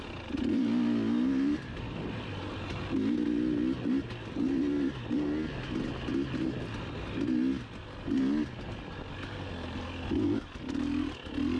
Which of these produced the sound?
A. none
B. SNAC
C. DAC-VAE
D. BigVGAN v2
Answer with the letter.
A